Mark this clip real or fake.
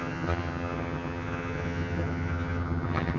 fake